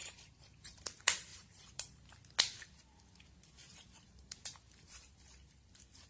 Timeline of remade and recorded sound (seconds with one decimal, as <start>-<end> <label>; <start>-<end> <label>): 0.0-0.8 remade; 0.8-1.3 recorded; 1.3-1.9 remade; 1.9-3.6 recorded; 3.6-5.0 remade; 5.0-6.1 recorded